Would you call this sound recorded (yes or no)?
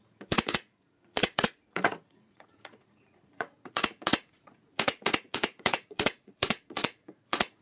no